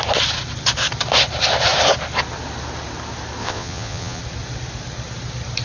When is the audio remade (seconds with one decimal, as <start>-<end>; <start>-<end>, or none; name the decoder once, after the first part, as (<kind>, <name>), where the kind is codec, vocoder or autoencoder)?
3.4-4.2 (vocoder, Vocos)